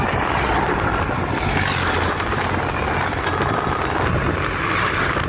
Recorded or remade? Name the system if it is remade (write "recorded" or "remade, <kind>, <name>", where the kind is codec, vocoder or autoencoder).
recorded